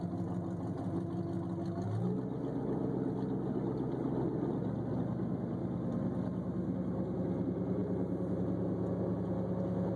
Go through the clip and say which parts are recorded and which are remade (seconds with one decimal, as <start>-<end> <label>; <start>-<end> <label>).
0.0-10.0 recorded